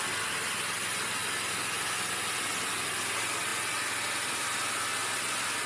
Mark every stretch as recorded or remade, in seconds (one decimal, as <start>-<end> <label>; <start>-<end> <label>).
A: 0.0-3.5 recorded; 3.5-4.7 remade; 4.7-5.7 recorded